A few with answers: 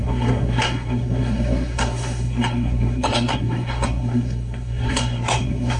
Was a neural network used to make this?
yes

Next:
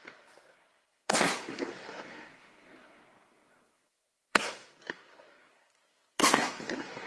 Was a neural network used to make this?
yes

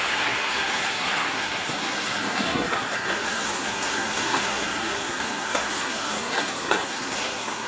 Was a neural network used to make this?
yes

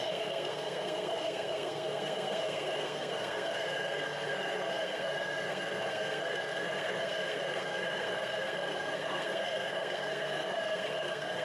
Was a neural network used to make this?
yes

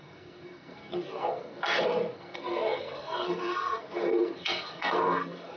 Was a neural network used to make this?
yes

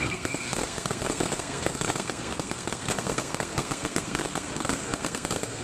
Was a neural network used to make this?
yes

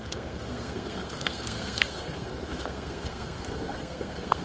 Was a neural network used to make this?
yes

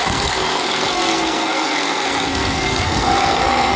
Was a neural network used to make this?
yes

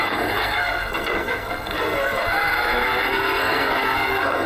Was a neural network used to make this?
yes